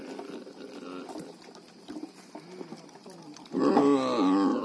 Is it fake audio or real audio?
real